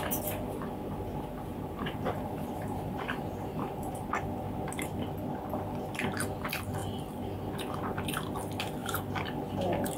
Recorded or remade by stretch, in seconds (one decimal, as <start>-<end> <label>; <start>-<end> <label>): 0.0-1.5 recorded; 1.5-4.1 remade; 4.1-10.0 recorded